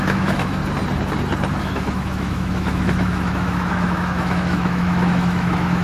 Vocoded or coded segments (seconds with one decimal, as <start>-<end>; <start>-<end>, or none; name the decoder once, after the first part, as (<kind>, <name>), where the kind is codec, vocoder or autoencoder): 0.0-0.6 (autoencoder, DAC-VAE); 1.6-5.8